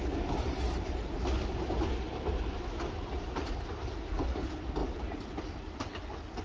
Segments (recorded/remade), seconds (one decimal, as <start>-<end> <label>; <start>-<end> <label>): 0.0-6.4 recorded